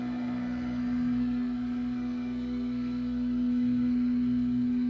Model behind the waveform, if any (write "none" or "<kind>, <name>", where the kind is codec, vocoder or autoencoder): codec, SNAC